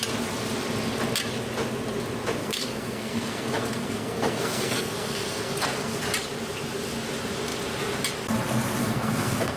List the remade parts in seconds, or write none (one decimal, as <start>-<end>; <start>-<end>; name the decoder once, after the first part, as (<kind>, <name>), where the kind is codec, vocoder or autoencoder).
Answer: 2.4-6.0 (codec, SNAC); 8.8-9.6